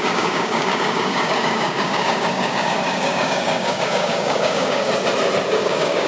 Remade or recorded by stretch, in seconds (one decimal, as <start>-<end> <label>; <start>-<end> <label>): 0.0-4.9 remade; 4.9-5.5 recorded; 5.5-6.1 remade

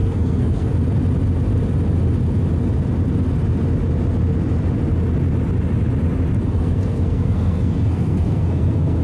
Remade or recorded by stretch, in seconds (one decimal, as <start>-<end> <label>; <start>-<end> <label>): 0.0-0.7 remade; 0.7-6.4 recorded; 6.4-9.0 remade

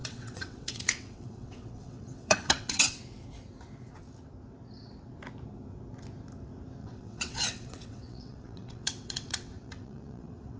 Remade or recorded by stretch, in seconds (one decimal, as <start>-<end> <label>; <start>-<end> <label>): 0.0-3.0 remade; 3.0-6.8 recorded; 6.8-10.6 remade

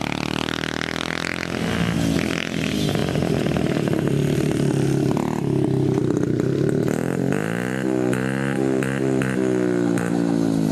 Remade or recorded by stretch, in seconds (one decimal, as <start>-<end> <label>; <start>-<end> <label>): 0.0-3.0 recorded; 3.0-3.6 remade; 3.6-10.7 recorded

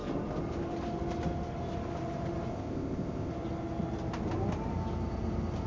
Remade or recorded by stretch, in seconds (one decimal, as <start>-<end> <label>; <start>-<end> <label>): 0.0-2.5 recorded; 2.5-3.3 remade; 3.3-5.7 recorded

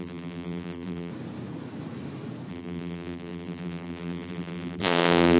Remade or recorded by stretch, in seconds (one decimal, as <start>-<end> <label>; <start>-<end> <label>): 0.0-1.1 remade; 1.1-2.5 recorded; 2.5-5.4 remade

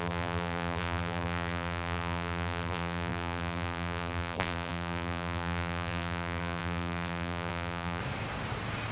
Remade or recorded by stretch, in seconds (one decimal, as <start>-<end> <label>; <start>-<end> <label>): 0.0-8.0 remade; 8.0-8.9 recorded